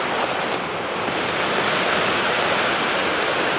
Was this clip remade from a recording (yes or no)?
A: no